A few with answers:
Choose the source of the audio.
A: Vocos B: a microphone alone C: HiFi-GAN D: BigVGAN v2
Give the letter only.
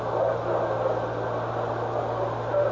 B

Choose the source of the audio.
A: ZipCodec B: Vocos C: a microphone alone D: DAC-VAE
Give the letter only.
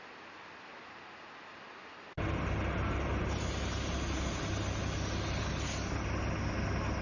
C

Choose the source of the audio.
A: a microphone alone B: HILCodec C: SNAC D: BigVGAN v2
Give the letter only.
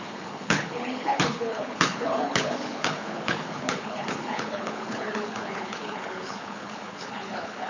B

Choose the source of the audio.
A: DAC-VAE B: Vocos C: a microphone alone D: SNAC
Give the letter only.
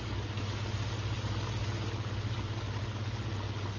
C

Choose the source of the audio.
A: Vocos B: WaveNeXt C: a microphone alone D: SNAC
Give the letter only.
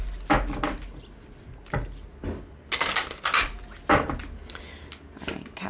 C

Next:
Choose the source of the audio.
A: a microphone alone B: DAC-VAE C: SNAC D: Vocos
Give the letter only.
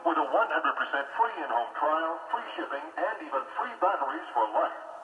A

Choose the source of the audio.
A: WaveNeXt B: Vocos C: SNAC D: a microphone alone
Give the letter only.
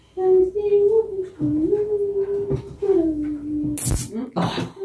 D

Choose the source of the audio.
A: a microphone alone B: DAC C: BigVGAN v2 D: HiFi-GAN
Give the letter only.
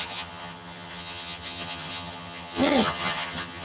D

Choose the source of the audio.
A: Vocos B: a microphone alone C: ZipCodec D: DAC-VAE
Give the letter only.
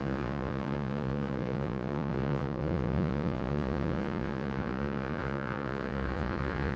A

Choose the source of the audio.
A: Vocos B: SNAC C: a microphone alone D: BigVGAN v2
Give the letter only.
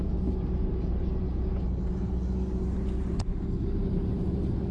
C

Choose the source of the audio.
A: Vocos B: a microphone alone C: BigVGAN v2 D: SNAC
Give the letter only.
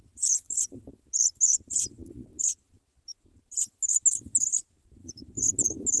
B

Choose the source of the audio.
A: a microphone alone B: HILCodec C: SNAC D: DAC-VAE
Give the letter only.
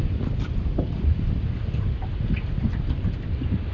A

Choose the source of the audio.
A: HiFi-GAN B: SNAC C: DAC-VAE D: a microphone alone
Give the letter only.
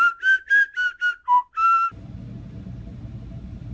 D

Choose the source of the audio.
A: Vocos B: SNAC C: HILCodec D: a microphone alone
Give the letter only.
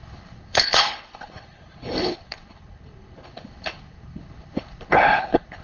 C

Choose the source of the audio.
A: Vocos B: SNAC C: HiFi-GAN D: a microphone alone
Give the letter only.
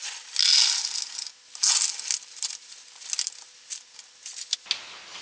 D